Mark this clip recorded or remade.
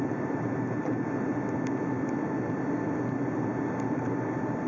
recorded